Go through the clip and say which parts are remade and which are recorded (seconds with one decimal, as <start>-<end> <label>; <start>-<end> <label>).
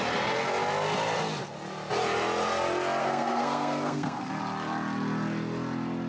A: 0.0-3.0 recorded; 3.0-4.4 remade; 4.4-6.1 recorded